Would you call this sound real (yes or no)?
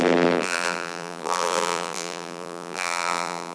no